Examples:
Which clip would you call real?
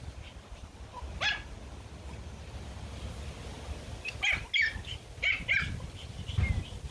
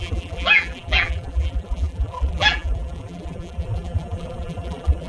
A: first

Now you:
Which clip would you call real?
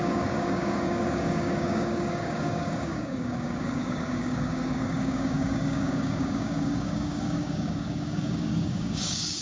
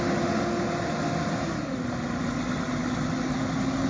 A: second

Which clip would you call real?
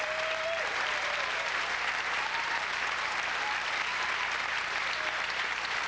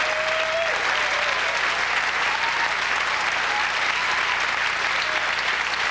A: second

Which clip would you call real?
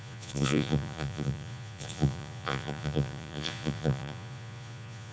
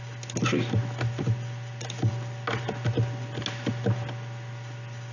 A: second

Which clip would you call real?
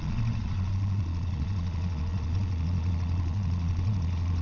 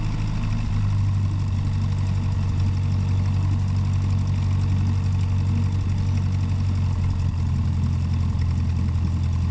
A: second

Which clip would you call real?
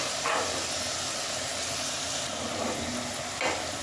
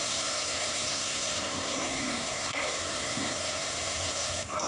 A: first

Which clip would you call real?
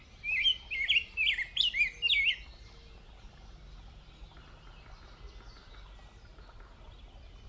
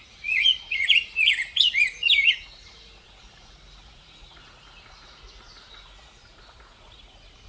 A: first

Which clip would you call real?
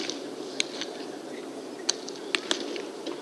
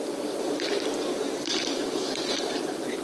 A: first